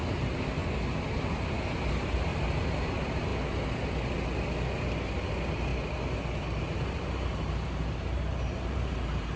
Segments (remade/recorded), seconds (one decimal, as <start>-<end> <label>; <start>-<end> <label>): 0.0-0.6 remade; 0.6-1.3 recorded; 1.3-2.3 remade; 2.3-2.9 recorded; 2.9-3.3 remade; 3.3-5.3 recorded; 5.3-5.7 remade; 5.7-6.6 recorded; 6.6-9.4 remade